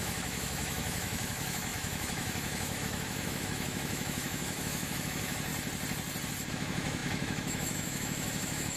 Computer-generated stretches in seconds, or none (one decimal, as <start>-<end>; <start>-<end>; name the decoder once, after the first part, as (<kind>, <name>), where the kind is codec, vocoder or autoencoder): 0.0-5.5 (autoencoder, DAC-VAE); 6.5-8.8